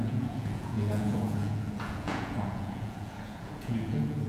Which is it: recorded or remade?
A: remade